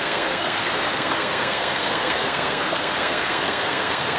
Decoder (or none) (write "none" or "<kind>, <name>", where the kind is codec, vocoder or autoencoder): codec, SNAC